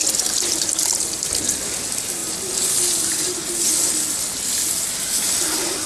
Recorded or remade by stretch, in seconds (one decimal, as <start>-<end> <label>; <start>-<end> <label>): 0.0-5.9 recorded